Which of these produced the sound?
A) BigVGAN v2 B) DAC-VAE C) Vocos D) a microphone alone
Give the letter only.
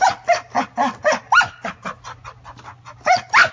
D